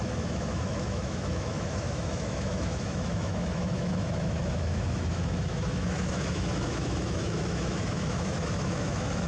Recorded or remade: remade